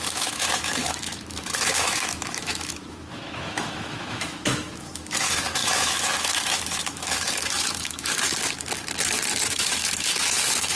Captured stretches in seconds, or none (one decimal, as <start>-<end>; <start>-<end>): 8.3-9.5